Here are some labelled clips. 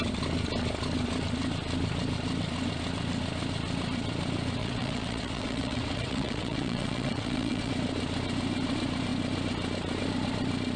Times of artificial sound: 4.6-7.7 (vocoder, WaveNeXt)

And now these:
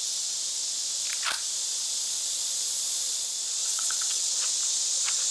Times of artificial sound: 3.6-4.3 (vocoder, WaveNeXt)

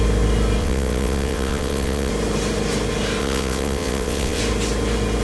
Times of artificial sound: 0.6-2.1 (vocoder, WaveNeXt); 3.2-4.4

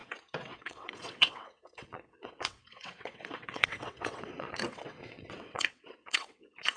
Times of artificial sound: 0.0-6.8 (vocoder, WaveNeXt)

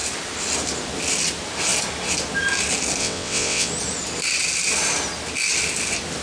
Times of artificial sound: 3.0-3.7 (vocoder, WaveNeXt)

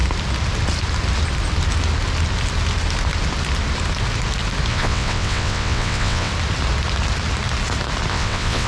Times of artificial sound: 4.7-6.3 (vocoder, WaveNeXt); 8.1-8.7

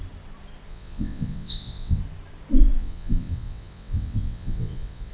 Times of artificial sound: 0.7-2.0 (vocoder, WaveNeXt); 2.8-5.1

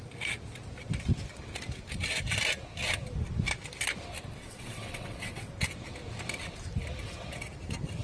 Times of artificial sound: 4.4-5.5 (vocoder, WaveNeXt)